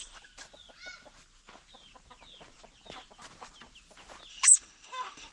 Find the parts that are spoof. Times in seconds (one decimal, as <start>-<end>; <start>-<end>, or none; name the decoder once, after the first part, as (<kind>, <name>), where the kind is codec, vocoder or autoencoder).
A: 4.3-5.3 (autoencoder, DAC-VAE)